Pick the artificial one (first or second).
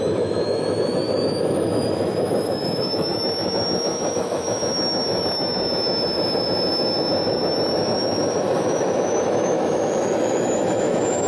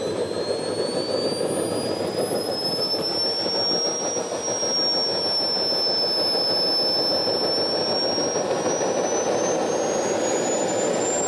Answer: first